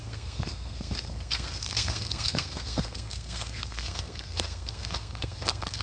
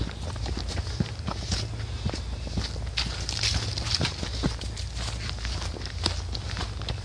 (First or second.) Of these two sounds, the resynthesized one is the first